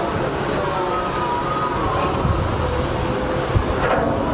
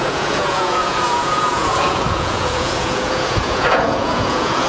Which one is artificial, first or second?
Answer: second